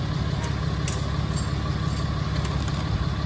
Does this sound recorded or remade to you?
recorded